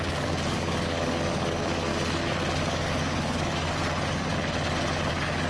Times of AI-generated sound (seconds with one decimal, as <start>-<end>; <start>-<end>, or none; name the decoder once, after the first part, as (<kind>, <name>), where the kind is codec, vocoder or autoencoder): 0.0-1.9 (codec, DAC); 2.6-4.3; 5.1-5.5